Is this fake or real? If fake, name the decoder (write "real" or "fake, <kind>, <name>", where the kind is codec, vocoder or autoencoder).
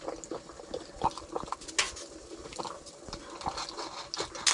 real